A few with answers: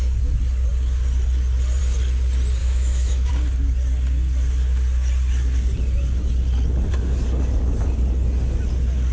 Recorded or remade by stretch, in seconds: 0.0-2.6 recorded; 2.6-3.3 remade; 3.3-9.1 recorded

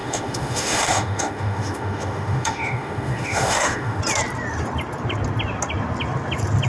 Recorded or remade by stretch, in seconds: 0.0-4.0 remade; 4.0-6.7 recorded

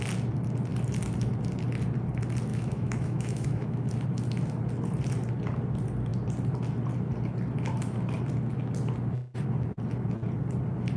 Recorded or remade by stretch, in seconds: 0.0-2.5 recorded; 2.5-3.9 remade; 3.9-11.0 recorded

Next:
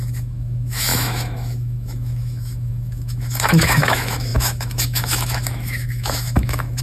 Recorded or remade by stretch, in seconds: 0.0-6.8 remade

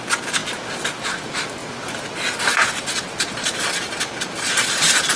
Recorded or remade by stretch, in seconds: 0.0-5.2 recorded

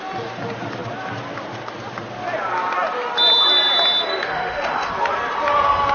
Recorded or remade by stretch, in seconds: 0.0-4.1 recorded; 4.1-4.9 remade; 4.9-5.9 recorded

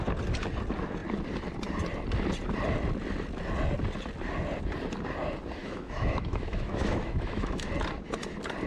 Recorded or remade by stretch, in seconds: 0.0-5.6 recorded; 5.6-7.7 remade; 7.7-8.7 recorded